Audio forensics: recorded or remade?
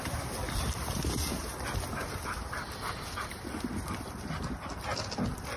recorded